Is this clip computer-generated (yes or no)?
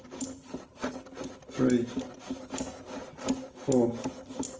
no